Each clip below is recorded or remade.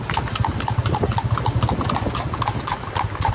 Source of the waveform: recorded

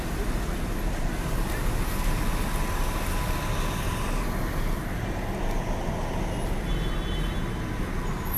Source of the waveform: recorded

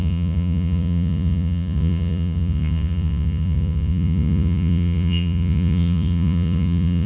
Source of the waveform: remade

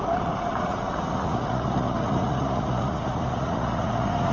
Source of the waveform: remade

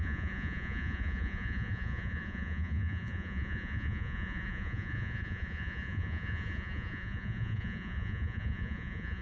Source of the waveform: remade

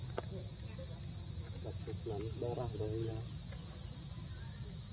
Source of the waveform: recorded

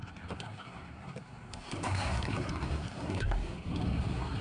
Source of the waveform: remade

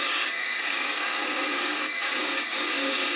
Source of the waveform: remade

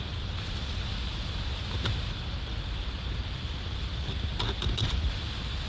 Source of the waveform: recorded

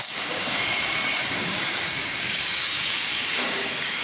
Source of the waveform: remade